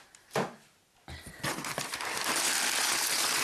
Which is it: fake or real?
real